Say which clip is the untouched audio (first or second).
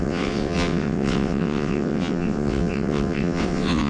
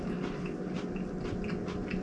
second